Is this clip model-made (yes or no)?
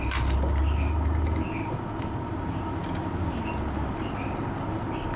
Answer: no